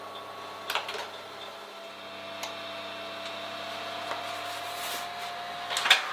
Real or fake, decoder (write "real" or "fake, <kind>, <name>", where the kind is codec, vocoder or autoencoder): real